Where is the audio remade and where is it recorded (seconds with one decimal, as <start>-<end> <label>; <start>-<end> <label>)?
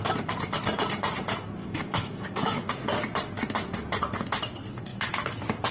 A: 0.0-1.6 recorded; 1.6-2.7 remade; 2.7-5.7 recorded